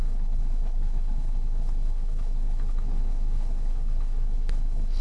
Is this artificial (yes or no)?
yes